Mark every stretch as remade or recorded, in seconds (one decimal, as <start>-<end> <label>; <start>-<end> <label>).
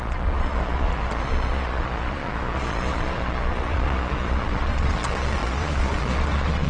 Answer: 0.0-6.7 remade